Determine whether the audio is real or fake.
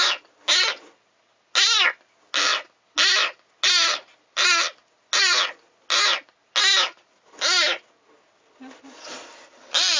real